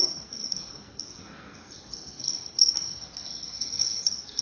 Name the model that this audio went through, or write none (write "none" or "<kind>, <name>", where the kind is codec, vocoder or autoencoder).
codec, SNAC